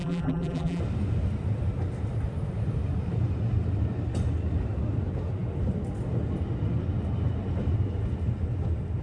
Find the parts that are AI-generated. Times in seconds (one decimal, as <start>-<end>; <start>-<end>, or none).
0.0-0.8